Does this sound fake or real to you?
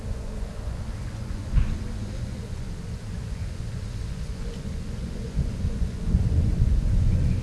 fake